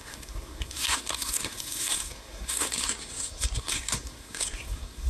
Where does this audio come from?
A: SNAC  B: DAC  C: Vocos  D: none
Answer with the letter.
A